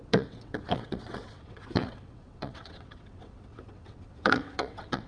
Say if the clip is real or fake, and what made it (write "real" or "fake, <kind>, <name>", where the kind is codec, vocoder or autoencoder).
fake, vocoder, WaveNeXt